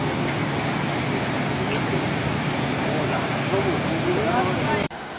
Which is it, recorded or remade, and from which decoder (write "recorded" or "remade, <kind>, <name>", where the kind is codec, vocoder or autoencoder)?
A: recorded